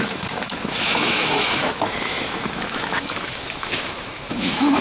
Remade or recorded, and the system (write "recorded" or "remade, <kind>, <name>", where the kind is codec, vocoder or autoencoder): remade, autoencoder, DAC-VAE